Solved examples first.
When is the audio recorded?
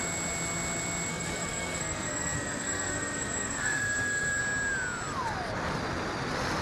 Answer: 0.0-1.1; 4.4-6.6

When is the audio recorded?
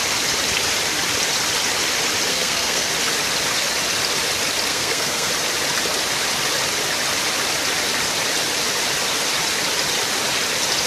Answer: 0.0-2.3; 2.9-4.7; 5.3-10.9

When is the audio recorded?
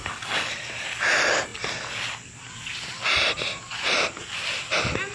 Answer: 0.5-5.1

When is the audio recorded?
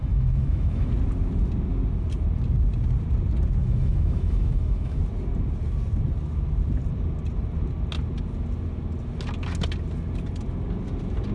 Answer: 0.9-3.6; 5.0-11.3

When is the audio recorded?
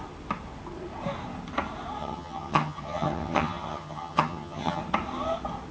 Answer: 0.0-2.0; 4.8-5.7